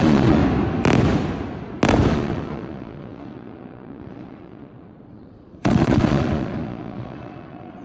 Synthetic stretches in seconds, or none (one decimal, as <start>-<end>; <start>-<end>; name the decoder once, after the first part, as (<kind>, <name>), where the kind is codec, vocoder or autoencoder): 0.0-0.4 (vocoder, Vocos); 2.1-7.8

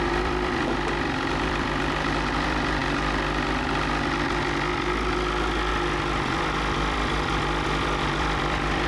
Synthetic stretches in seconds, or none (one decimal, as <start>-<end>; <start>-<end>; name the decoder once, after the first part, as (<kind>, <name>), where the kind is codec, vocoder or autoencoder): 0.0-2.8 (vocoder, BigVGAN v2); 5.7-8.9

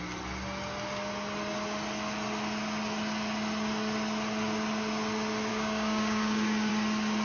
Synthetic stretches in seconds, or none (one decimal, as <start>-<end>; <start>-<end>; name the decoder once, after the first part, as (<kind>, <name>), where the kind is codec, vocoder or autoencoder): 5.5-6.7 (codec, DAC)

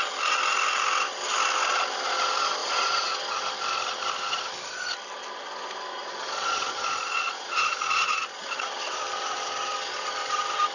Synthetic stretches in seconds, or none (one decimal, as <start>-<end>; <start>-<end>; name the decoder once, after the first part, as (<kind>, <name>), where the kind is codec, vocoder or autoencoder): 2.6-3.1 (vocoder, Vocos); 5.9-8.6

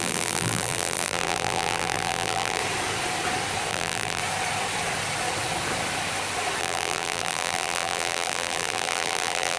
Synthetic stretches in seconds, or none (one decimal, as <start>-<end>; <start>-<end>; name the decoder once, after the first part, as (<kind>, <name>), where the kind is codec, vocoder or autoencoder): 0.0-2.6 (vocoder, BigVGAN v2); 3.7-4.2; 6.6-9.6